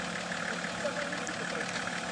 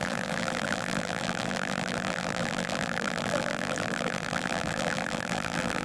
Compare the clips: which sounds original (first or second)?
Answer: first